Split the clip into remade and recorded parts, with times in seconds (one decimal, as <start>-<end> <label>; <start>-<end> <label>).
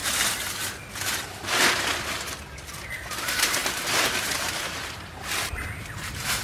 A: 0.0-3.1 recorded; 3.1-6.4 remade